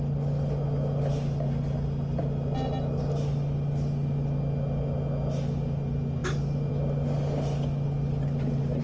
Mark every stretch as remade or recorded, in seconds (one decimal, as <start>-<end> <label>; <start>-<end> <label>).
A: 0.0-8.8 recorded